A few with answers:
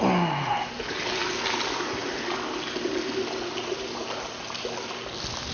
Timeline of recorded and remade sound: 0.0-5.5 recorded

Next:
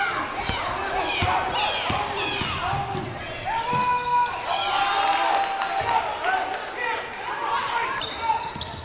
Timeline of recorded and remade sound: 0.0-8.8 recorded

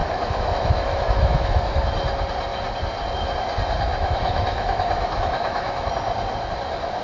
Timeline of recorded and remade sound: 0.0-1.7 remade; 1.7-3.9 recorded; 3.9-5.9 remade; 5.9-7.0 recorded

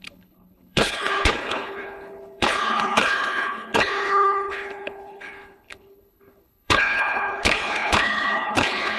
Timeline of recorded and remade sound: 0.0-9.0 remade

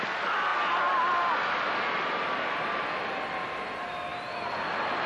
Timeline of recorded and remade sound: 0.0-5.1 recorded

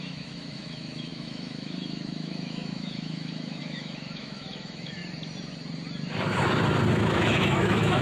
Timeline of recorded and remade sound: 0.0-5.0 remade; 5.0-6.9 recorded; 6.9-8.0 remade

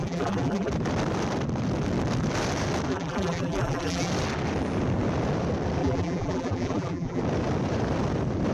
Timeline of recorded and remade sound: 0.0-0.7 remade; 0.7-2.9 recorded; 2.9-4.1 remade; 4.1-5.8 recorded; 5.8-7.2 remade; 7.2-8.5 recorded

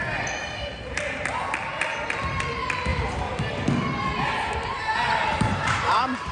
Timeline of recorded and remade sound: 0.0-2.9 recorded; 2.9-3.4 remade; 3.4-5.3 recorded; 5.3-6.3 remade